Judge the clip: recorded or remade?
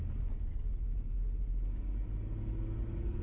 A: recorded